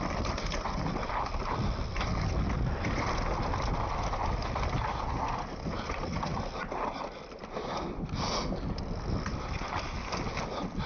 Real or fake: real